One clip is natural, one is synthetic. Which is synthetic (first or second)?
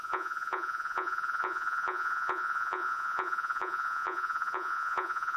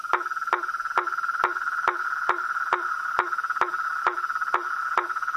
first